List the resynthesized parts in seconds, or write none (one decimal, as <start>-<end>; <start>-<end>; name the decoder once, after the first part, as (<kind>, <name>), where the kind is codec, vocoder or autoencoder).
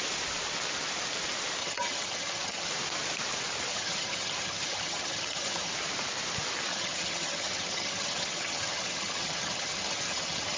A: 1.6-2.7 (vocoder, HiFi-GAN); 3.7-5.7; 6.7-10.6